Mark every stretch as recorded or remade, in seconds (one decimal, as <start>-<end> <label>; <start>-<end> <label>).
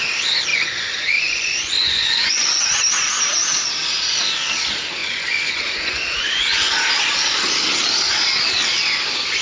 0.0-0.5 recorded; 0.5-2.6 remade; 2.6-5.0 recorded; 5.0-6.8 remade; 6.8-9.4 recorded